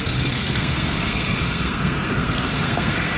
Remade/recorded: remade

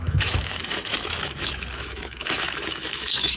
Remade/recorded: remade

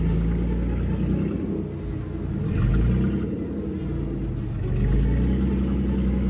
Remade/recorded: recorded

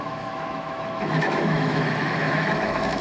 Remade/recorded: remade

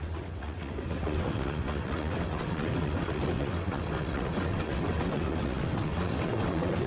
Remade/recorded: remade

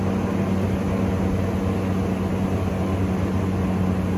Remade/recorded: recorded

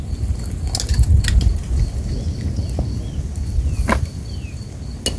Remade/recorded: recorded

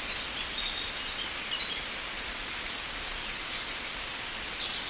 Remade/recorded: recorded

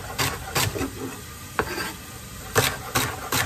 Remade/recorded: recorded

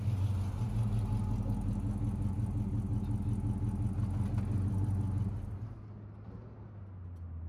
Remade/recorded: recorded